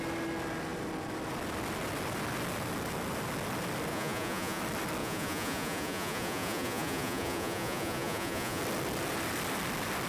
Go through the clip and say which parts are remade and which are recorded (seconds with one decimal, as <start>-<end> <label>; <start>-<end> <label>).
0.0-3.9 recorded; 3.9-4.6 remade; 4.6-5.0 recorded; 5.0-8.6 remade; 8.6-10.1 recorded